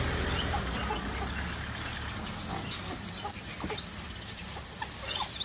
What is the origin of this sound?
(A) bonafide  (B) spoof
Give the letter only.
A